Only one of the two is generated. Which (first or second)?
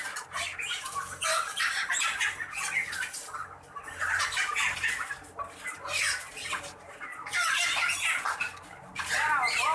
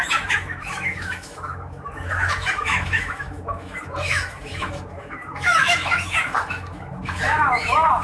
second